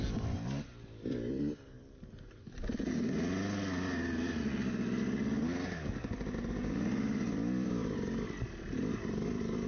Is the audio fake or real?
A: real